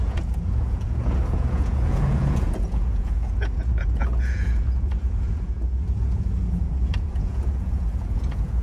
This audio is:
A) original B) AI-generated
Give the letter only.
B